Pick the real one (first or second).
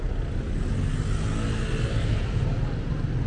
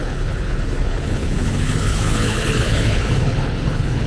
first